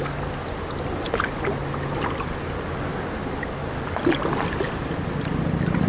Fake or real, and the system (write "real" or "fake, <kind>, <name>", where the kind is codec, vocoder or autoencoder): real